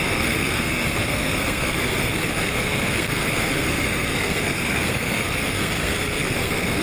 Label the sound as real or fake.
fake